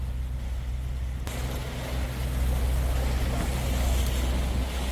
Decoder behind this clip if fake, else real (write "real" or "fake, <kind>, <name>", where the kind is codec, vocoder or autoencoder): real